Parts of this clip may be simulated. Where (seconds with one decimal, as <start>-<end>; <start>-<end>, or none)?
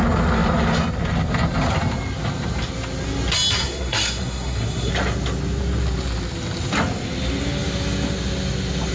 3.6-4.9